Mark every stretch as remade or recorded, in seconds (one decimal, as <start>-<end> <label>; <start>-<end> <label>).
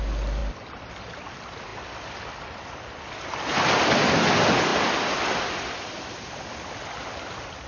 0.0-7.7 recorded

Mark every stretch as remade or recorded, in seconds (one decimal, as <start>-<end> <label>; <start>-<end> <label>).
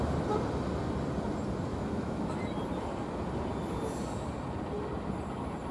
0.0-1.7 recorded; 1.7-2.3 remade; 2.3-5.7 recorded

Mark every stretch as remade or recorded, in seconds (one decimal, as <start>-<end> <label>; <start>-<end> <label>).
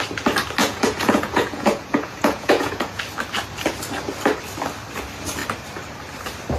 0.0-0.6 recorded; 0.6-3.0 remade; 3.0-6.6 recorded